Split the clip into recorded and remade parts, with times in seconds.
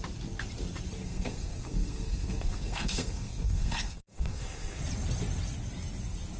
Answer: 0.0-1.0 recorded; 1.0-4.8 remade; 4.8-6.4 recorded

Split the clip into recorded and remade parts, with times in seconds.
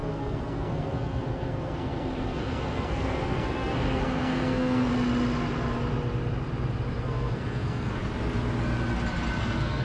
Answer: 0.0-4.9 remade; 4.9-7.0 recorded; 7.0-8.0 remade; 8.0-9.4 recorded; 9.4-9.8 remade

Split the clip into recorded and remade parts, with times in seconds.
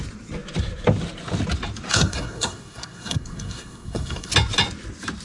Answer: 0.0-1.9 recorded; 1.9-4.3 remade; 4.3-5.2 recorded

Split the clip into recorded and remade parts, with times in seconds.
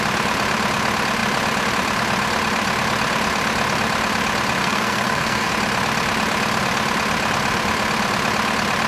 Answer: 0.0-4.6 recorded; 4.6-5.5 remade; 5.5-8.9 recorded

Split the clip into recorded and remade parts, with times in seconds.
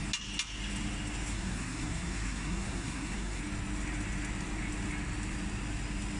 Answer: 0.0-1.3 recorded; 1.3-3.4 remade; 3.4-6.2 recorded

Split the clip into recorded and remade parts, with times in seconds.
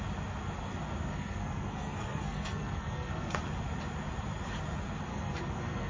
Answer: 0.0-1.0 recorded; 1.0-3.4 remade; 3.4-5.1 recorded; 5.1-5.9 remade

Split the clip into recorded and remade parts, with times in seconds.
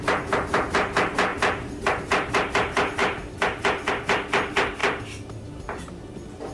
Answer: 0.0-6.5 recorded